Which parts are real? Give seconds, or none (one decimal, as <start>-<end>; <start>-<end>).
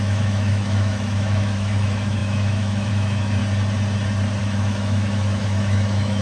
3.4-4.4